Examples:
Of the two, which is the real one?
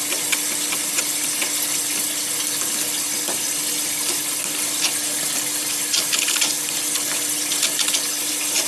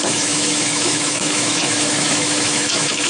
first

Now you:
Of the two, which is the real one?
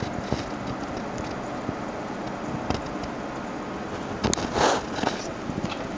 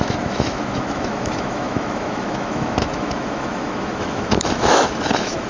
first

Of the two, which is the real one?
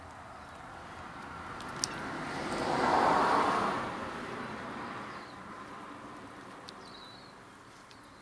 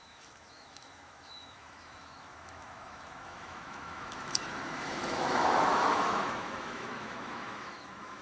first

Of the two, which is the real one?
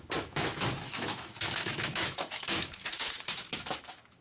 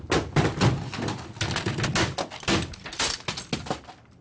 second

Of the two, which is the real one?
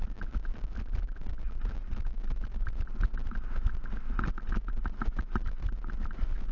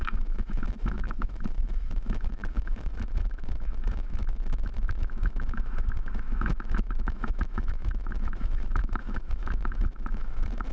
first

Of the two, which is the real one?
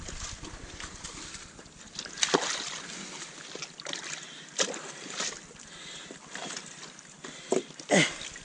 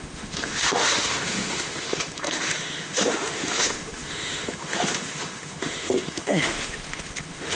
first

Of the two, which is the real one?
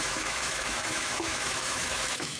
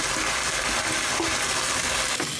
second